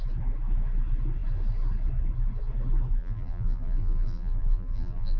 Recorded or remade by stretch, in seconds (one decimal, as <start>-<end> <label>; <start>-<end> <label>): 0.0-3.0 recorded; 3.0-5.2 remade

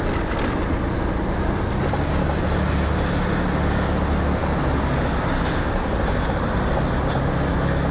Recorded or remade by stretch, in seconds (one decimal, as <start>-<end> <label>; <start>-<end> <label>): 0.0-7.9 recorded

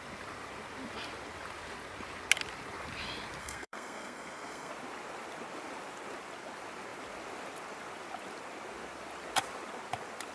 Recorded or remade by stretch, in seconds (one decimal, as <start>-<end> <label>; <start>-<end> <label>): 0.0-3.4 recorded; 3.4-4.7 remade; 4.7-10.3 recorded

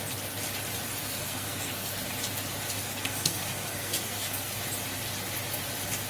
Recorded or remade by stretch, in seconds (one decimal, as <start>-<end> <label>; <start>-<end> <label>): 0.0-1.0 recorded; 1.0-1.9 remade; 1.9-2.8 recorded; 2.8-4.6 remade; 4.6-6.1 recorded

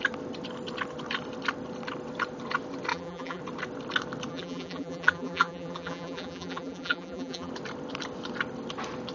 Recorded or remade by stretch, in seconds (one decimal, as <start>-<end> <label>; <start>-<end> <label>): 0.0-2.9 recorded; 2.9-3.4 remade; 3.4-4.3 recorded; 4.3-7.5 remade; 7.5-9.1 recorded

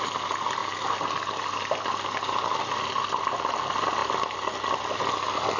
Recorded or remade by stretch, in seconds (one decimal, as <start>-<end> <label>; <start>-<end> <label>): 0.0-5.6 recorded

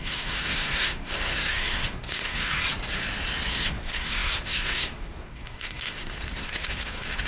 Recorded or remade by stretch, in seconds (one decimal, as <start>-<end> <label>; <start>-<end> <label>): 0.0-2.6 remade; 2.6-3.5 recorded; 3.5-7.3 remade

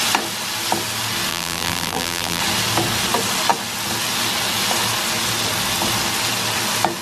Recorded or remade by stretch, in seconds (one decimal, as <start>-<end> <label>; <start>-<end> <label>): 0.0-1.3 recorded; 1.3-2.4 remade; 2.4-7.0 recorded